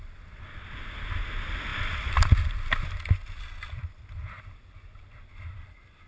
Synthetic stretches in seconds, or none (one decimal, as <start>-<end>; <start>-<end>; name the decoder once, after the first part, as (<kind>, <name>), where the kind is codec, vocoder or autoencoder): none